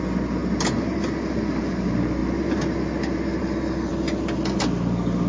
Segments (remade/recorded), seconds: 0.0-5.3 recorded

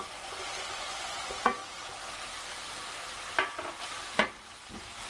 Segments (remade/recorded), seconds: 0.0-1.6 remade; 1.6-5.1 recorded

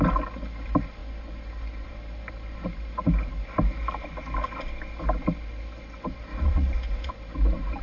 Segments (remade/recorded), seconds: 0.0-6.3 recorded; 6.3-7.1 remade; 7.1-7.8 recorded